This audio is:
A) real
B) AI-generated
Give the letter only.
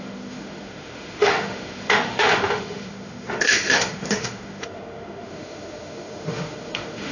B